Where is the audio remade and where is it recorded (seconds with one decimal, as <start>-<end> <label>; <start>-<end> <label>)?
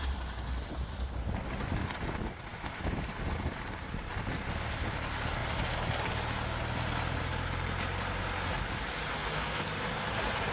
0.0-9.1 recorded; 9.1-9.6 remade; 9.6-10.5 recorded